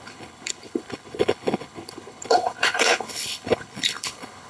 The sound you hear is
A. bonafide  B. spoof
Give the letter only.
B